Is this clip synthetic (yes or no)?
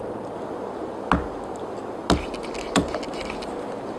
no